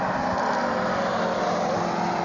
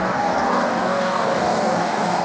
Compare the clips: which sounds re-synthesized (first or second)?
second